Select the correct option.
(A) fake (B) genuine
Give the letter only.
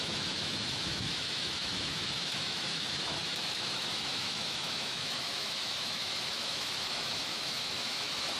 A